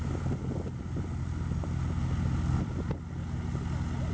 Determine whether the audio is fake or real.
real